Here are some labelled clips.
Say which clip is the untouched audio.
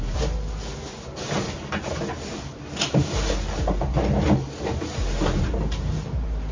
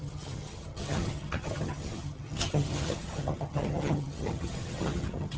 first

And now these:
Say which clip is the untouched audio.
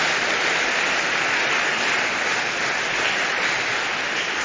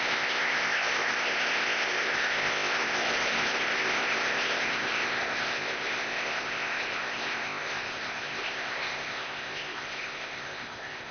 first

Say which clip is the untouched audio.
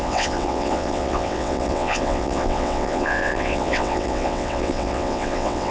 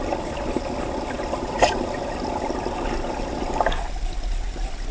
second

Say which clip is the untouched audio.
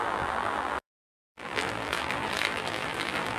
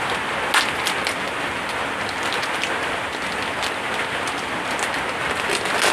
second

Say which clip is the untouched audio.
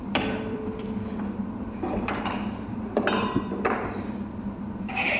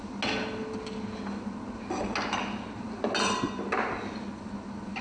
second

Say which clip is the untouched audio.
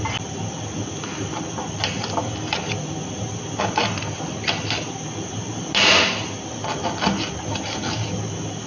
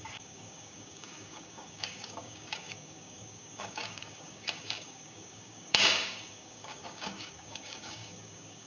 first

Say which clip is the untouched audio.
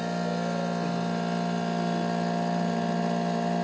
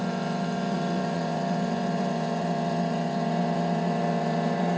first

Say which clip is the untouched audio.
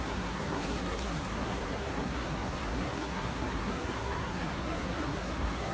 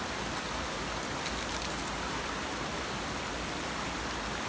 second